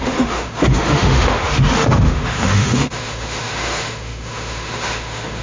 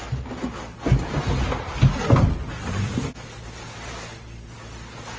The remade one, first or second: first